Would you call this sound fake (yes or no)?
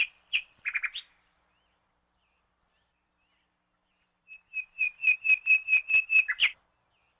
yes